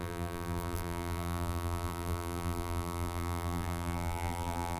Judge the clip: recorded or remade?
remade